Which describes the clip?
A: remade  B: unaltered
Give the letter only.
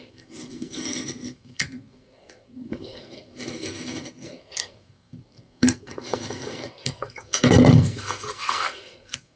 A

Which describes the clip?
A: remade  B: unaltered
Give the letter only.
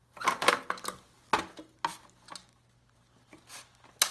B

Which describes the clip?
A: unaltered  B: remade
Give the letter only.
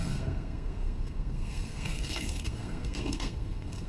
B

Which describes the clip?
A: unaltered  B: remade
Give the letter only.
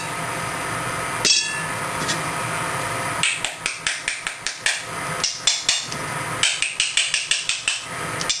A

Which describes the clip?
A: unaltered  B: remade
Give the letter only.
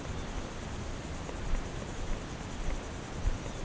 A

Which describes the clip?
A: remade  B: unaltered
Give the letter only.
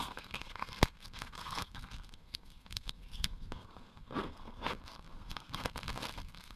A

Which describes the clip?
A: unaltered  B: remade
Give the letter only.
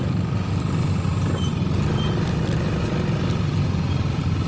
A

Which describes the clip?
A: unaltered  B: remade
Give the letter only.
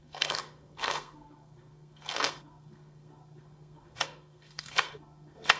B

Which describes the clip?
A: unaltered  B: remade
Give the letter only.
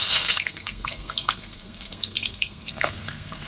B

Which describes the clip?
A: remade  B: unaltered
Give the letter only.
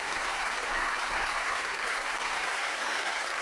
A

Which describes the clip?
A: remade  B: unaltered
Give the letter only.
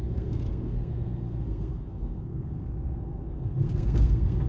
A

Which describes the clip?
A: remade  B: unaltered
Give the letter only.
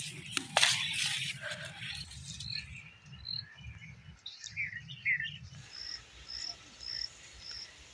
B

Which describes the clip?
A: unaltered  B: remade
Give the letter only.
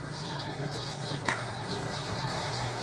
B